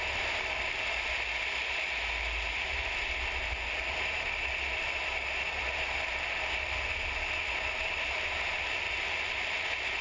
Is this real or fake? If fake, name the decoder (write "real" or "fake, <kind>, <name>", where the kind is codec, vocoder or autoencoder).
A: real